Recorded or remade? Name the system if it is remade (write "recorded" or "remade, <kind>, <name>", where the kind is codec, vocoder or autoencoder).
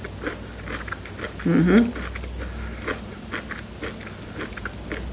recorded